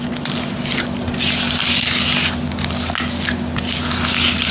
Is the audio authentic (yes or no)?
yes